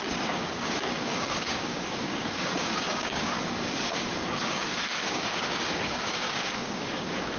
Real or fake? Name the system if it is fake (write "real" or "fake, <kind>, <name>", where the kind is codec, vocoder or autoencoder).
fake, codec, DAC